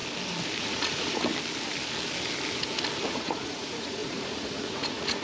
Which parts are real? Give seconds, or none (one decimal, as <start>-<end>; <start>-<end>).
0.0-0.6; 1.3-3.1